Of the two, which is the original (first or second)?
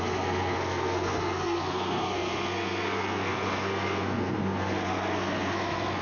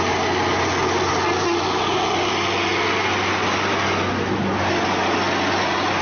second